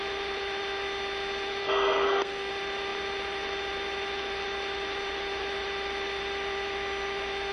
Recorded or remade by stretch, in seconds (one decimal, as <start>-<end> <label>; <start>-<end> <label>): 0.0-1.6 recorded; 1.6-2.5 remade; 2.5-7.5 recorded